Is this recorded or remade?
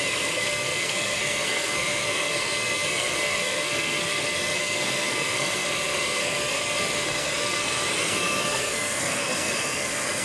remade